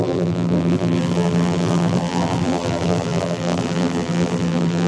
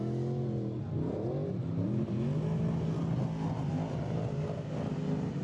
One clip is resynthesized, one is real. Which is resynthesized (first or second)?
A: first